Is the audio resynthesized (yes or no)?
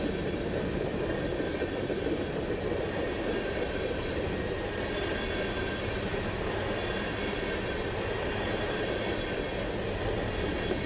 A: no